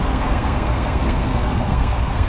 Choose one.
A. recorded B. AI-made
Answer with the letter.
B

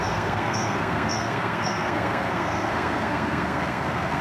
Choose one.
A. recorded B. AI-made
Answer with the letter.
B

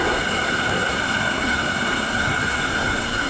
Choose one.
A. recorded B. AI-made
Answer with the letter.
B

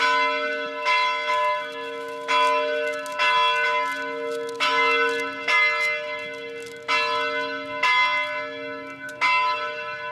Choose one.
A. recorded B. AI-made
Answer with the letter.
A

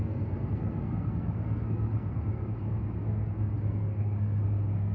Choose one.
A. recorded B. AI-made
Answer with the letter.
B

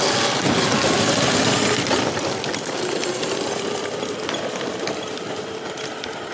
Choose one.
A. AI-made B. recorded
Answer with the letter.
B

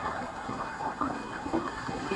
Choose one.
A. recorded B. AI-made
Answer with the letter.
B